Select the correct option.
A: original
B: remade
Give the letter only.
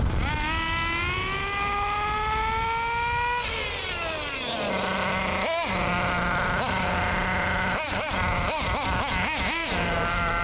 A